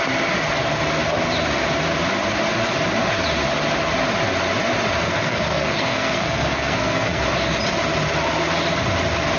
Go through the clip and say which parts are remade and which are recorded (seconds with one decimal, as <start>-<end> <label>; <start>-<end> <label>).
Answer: 0.0-5.0 recorded; 5.0-7.2 remade; 7.2-9.4 recorded